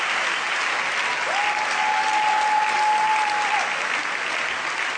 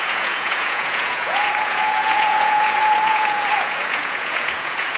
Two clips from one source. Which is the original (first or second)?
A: first